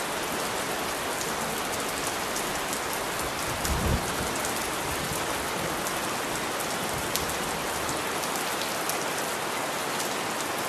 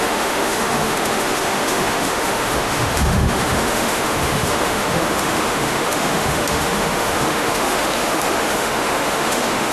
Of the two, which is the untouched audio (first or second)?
first